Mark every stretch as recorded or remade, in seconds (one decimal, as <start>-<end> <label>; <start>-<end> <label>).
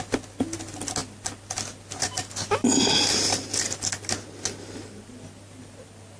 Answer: 0.0-6.2 recorded